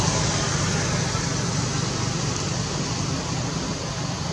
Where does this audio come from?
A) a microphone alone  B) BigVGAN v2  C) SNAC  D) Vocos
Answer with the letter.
A